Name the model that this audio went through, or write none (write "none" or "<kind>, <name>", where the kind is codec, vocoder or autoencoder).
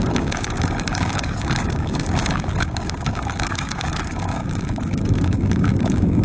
codec, DAC